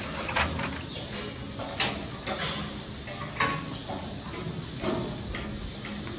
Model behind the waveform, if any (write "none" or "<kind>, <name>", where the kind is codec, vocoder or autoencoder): none